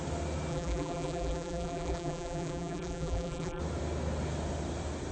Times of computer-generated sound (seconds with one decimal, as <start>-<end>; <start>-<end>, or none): 0.5-3.6